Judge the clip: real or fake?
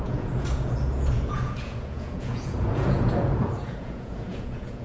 fake